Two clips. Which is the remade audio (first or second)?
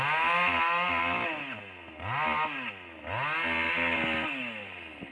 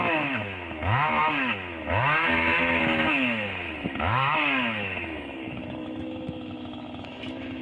second